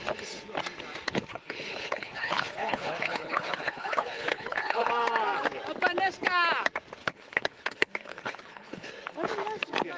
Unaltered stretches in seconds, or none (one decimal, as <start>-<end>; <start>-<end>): 0.0-1.3; 4.9-7.0; 8.9-10.0